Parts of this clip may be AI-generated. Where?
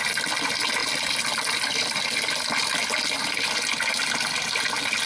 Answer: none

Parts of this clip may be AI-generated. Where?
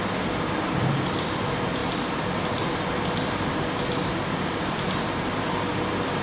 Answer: none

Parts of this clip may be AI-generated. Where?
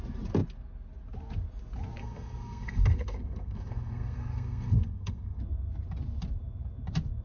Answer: 2.0-5.4 (codec, SNAC)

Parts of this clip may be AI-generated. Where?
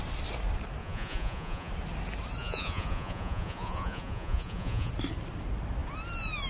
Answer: 0.8-1.7 (vocoder, Vocos); 2.4-4.9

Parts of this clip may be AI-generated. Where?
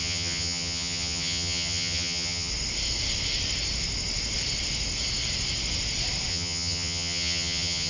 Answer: 0.0-2.5 (vocoder, HiFi-GAN); 6.3-7.9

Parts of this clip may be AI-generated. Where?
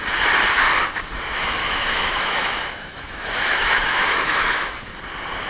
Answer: 1.6-4.9 (autoencoder, DAC-VAE)